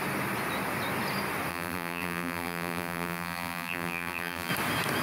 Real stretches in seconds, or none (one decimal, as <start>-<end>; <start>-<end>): 0.0-1.5; 4.5-5.0